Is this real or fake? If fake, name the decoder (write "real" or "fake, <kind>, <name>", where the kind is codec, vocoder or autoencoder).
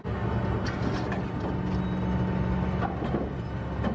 real